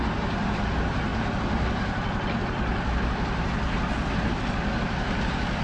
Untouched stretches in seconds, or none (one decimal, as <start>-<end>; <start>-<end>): 0.0-5.6